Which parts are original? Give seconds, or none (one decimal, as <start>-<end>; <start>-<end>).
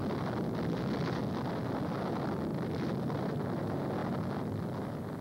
0.0-2.5; 3.6-4.0; 4.6-5.2